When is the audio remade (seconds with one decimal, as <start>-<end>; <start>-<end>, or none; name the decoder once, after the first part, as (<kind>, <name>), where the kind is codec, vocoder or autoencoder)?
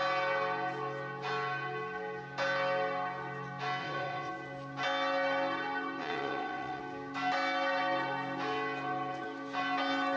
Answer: 3.8-4.3 (vocoder, WaveNeXt); 6.0-6.8